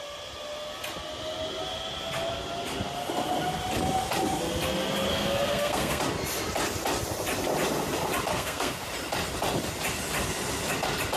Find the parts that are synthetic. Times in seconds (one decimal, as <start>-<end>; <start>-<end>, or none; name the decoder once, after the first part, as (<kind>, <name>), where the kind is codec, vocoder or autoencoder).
5.1-6.0 (codec, SNAC); 8.3-8.8